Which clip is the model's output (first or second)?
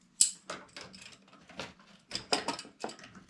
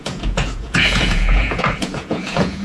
second